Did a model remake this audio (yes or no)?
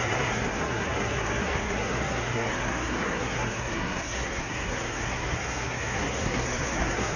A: yes